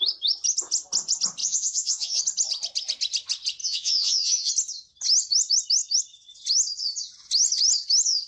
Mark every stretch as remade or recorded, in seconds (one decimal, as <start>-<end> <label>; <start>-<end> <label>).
0.0-1.4 recorded; 1.4-2.2 remade; 2.2-3.6 recorded; 3.6-4.5 remade; 4.5-8.3 recorded